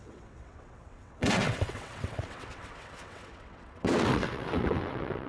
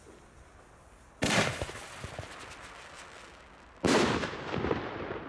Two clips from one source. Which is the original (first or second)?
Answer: second